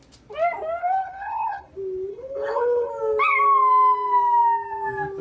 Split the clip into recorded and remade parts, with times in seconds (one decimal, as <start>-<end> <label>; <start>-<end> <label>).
0.0-0.8 recorded; 0.8-1.7 remade; 1.7-2.1 recorded; 2.1-2.9 remade; 2.9-5.2 recorded